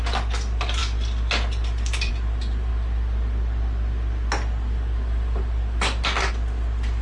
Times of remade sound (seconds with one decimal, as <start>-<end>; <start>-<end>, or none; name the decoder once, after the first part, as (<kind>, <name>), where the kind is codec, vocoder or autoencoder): none

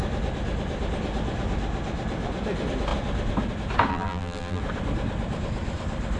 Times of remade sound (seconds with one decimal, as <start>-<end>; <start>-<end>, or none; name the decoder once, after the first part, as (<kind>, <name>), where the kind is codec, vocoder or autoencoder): 3.9-4.6 (vocoder, BigVGAN v2)

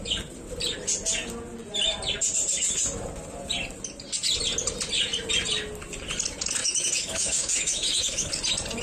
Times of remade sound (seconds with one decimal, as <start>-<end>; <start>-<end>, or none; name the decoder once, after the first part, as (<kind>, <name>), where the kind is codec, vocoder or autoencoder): 6.6-8.3 (autoencoder, DAC-VAE)

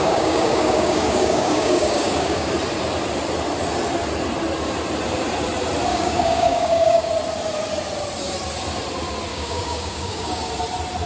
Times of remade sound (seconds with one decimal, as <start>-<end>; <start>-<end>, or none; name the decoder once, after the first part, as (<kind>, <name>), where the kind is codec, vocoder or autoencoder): 0.0-2.5 (codec, DAC); 5.9-7.1; 9.3-10.5

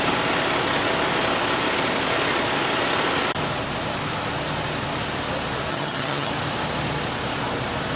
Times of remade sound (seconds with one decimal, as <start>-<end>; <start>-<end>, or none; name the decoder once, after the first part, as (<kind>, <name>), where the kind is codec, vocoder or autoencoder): 5.7-6.3 (vocoder, HiFi-GAN)

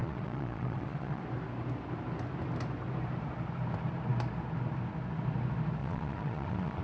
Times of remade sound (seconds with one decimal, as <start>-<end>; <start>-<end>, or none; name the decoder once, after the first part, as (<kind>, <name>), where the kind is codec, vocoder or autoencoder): 0.0-1.2 (vocoder, Vocos); 5.8-6.8

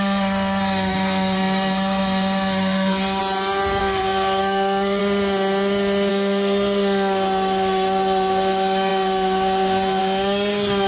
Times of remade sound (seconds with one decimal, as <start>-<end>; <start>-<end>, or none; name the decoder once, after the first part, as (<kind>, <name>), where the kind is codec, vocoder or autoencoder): 0.0-3.2 (codec, SNAC); 3.8-5.0; 6.1-10.9